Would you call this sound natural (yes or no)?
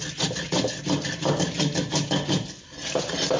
yes